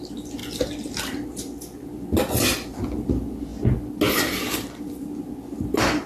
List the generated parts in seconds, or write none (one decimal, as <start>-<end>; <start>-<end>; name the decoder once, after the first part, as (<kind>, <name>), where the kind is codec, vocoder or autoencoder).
none